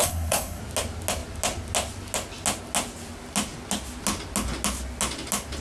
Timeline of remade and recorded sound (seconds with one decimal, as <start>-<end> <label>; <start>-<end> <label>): 0.0-0.6 remade; 0.6-5.6 recorded